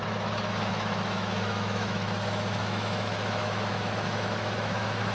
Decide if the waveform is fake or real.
fake